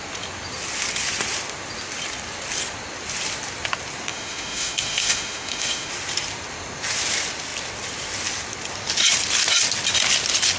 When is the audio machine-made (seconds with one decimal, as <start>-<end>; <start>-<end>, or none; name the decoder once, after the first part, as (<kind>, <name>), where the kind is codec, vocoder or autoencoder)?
4.1-5.9 (autoencoder, DAC-VAE)